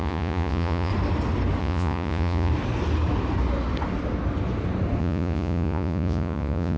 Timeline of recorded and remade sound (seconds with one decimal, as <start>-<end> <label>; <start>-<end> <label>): 0.0-0.9 remade; 0.9-1.6 recorded; 1.6-2.5 remade; 2.5-5.0 recorded; 5.0-6.8 remade